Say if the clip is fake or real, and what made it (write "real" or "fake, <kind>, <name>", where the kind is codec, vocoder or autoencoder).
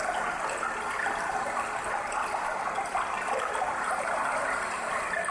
real